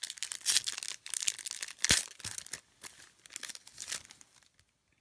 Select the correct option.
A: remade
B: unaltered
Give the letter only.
B